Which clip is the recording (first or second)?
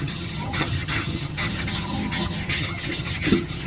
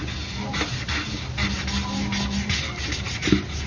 second